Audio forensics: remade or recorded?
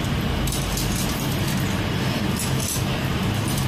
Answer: recorded